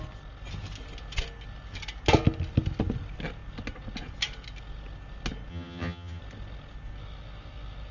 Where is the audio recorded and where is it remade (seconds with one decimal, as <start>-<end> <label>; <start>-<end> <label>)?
0.0-5.5 recorded; 5.5-6.2 remade; 6.2-7.9 recorded

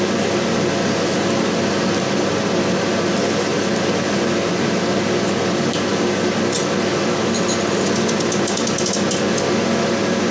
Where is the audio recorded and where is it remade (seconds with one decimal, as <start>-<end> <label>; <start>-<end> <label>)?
0.0-10.3 recorded

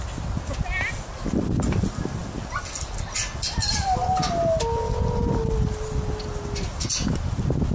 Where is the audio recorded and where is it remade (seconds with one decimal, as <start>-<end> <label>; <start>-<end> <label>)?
0.0-7.7 recorded

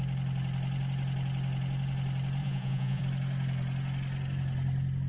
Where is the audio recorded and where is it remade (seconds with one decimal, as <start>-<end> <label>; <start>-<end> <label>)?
0.0-2.4 recorded; 2.4-3.0 remade; 3.0-5.1 recorded